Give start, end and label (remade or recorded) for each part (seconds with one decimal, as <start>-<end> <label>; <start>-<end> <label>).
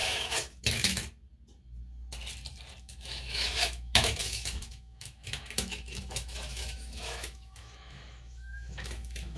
0.0-1.0 remade; 1.0-2.8 recorded; 2.8-9.4 remade